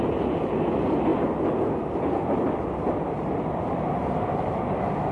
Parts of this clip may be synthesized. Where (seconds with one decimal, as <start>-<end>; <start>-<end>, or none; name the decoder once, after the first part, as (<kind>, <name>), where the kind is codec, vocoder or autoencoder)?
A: none